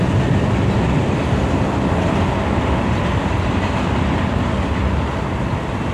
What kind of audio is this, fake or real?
real